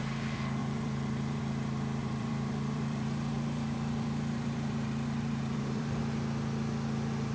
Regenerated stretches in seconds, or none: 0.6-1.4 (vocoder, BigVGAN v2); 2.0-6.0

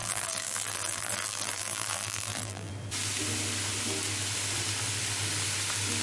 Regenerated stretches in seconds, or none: 0.0-2.7 (vocoder, BigVGAN v2)

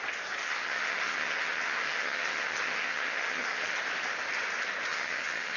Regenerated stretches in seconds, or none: 0.4-3.8 (vocoder, HiFi-GAN); 4.9-5.6

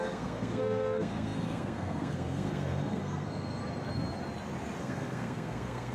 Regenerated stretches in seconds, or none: 0.0-3.6 (codec, SNAC); 4.8-5.9

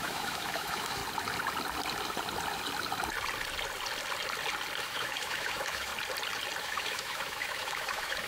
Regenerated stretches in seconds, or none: 0.0-1.0 (autoencoder, DAC-VAE); 4.8-5.9; 6.6-8.3

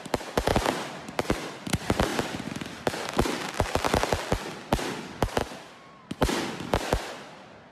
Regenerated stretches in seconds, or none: 5.4-6.1 (vocoder, BigVGAN v2)

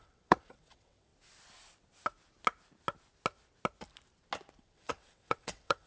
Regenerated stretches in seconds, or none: 0.0-1.1 (vocoder, WaveNeXt); 4.6-5.9

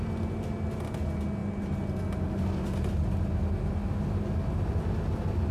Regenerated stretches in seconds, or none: none